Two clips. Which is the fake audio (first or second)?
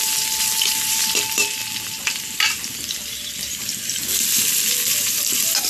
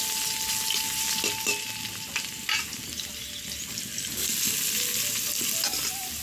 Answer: first